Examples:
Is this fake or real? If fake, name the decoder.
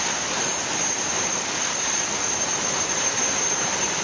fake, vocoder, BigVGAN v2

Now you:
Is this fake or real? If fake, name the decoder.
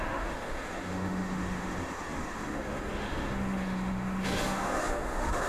fake, autoencoder, DAC-VAE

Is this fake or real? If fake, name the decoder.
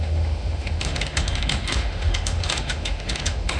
fake, autoencoder, DAC-VAE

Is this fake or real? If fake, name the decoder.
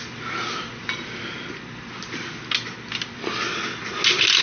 real